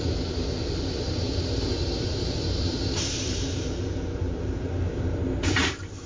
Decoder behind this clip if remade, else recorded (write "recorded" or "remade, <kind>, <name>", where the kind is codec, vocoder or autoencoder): remade, vocoder, BigVGAN v2